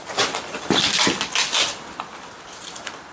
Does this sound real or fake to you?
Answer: real